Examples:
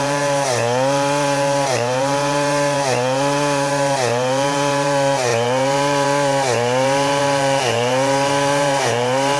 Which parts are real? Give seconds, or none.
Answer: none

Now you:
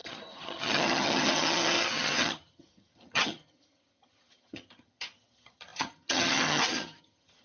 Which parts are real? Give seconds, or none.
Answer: none

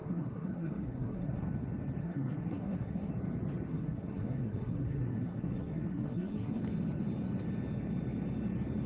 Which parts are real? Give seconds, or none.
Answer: 1.5-2.0; 3.1-3.7; 6.6-8.9

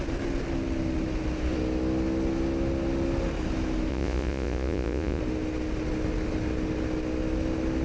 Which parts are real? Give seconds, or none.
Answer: 0.0-3.9; 5.2-7.8

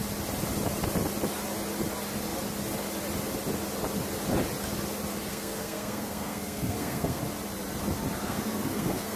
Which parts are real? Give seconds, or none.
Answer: 0.0-5.3; 7.2-8.2

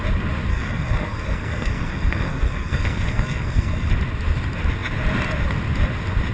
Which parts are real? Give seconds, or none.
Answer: 0.0-0.5; 3.9-6.3

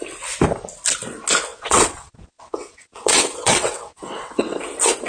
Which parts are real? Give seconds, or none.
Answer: 0.0-1.5; 4.6-5.1

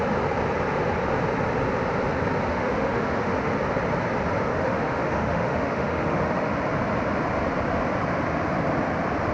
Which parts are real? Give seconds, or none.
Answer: 0.0-2.5; 3.5-4.5; 6.5-9.3